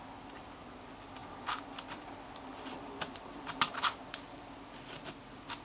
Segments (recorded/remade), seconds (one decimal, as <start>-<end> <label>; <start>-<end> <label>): 0.0-1.2 recorded; 1.2-4.6 remade; 4.6-5.6 recorded